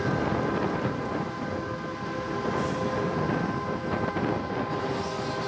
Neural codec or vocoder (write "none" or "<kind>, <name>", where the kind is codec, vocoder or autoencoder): none